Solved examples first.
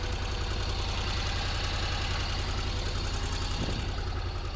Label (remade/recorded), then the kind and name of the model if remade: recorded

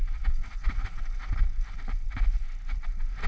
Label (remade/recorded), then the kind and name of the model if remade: recorded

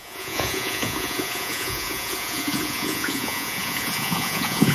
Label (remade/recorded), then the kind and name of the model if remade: remade, vocoder, Vocos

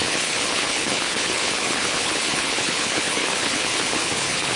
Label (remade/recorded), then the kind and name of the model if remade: remade, codec, HILCodec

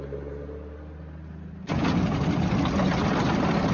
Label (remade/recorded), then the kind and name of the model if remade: recorded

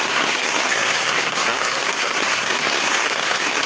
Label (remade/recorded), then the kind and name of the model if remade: remade, codec, SNAC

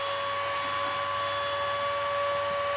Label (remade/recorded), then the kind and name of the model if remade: recorded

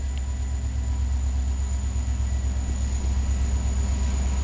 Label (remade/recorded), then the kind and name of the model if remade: recorded